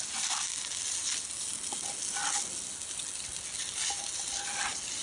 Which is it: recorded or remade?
recorded